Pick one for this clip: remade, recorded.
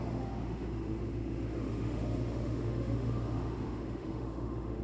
remade